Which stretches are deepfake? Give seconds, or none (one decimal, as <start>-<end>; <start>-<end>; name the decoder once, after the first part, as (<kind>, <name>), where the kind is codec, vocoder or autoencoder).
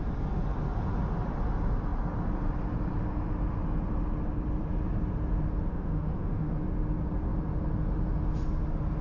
5.7-6.5 (autoencoder, DAC-VAE)